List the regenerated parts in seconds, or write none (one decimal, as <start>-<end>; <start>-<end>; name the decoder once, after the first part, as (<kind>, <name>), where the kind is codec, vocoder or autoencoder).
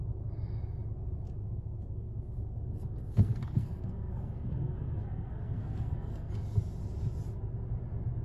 1.4-6.3 (codec, SNAC)